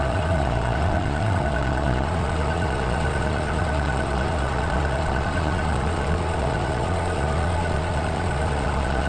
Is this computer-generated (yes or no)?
yes